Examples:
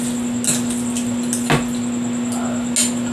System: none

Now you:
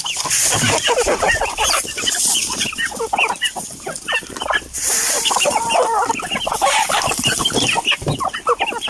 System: vocoder, BigVGAN v2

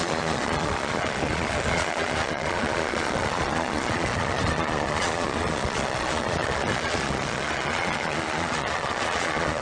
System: vocoder, Vocos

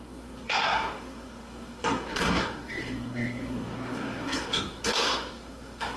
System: codec, SNAC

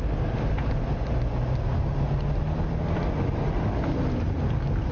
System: none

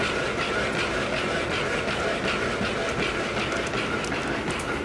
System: none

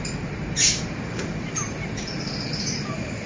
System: vocoder, BigVGAN v2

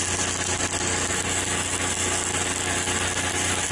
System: none